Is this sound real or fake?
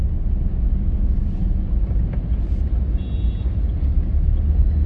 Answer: real